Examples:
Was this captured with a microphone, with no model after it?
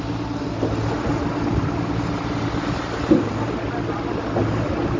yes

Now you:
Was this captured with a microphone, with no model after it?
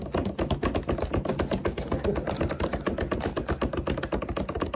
yes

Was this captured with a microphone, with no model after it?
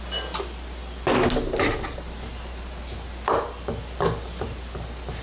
yes